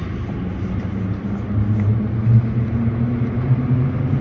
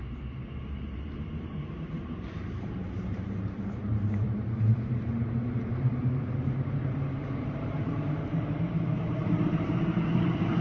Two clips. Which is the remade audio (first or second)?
second